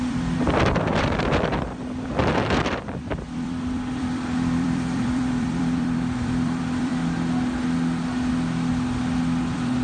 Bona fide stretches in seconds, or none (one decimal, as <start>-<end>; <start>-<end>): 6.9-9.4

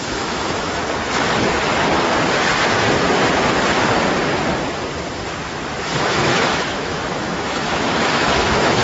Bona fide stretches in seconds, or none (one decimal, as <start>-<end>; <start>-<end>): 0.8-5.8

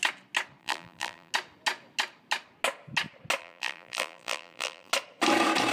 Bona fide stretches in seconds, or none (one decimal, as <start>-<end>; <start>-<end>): 0.0-0.6; 1.3-3.4; 4.9-5.7

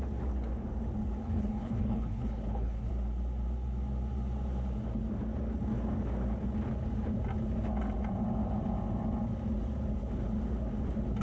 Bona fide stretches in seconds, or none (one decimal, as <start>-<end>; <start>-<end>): 0.0-1.2; 2.9-11.2

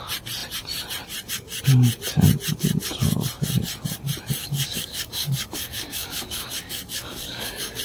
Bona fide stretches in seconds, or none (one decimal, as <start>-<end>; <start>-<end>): 0.0-4.4